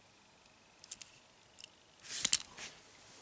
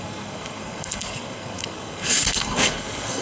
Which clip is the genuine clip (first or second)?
first